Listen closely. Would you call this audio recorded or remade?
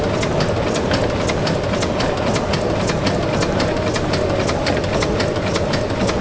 recorded